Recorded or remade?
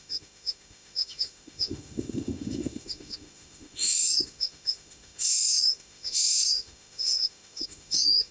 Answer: remade